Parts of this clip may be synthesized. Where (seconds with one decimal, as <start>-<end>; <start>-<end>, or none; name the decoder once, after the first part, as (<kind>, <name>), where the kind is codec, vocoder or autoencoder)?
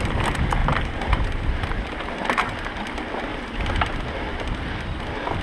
0.6-1.8 (vocoder, BigVGAN v2); 3.3-4.0